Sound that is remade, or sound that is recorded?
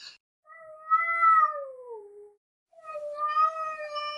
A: recorded